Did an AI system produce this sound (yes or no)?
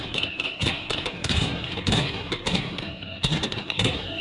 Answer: yes